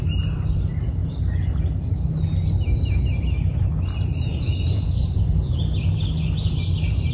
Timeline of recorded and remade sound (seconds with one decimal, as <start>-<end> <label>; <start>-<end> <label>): 0.0-4.3 recorded; 4.3-5.6 remade; 5.6-7.1 recorded